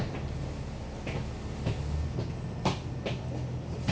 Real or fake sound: real